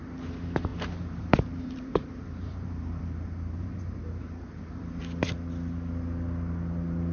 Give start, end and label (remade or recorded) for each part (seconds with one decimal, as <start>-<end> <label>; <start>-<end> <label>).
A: 0.0-0.7 recorded; 0.7-5.0 remade; 5.0-7.1 recorded